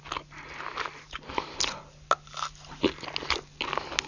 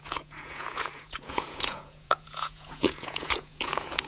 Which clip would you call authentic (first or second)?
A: first